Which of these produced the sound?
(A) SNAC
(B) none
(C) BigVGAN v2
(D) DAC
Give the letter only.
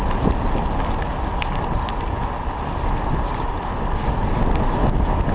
B